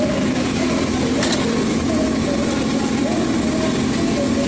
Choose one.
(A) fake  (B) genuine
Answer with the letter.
B